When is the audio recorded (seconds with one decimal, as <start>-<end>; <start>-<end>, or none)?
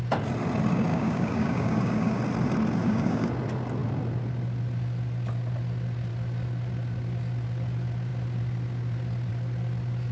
0.0-0.9; 2.2-2.8; 3.3-10.1